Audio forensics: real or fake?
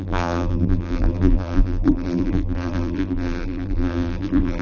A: fake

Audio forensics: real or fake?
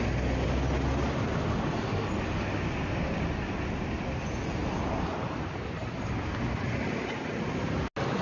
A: real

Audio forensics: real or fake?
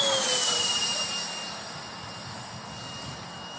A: real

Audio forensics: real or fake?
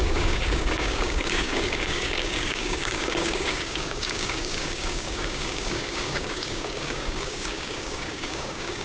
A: fake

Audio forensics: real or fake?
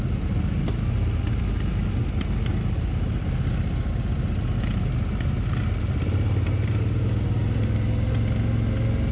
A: real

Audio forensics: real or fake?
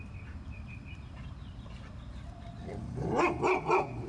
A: fake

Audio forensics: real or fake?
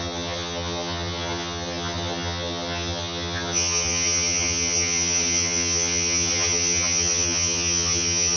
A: fake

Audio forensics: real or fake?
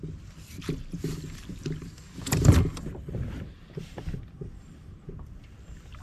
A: fake